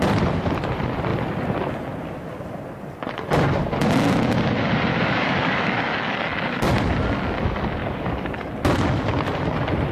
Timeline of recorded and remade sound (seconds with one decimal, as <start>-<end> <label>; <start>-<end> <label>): 0.0-4.9 recorded; 4.9-6.6 remade; 6.6-7.8 recorded; 7.8-8.5 remade; 8.5-9.9 recorded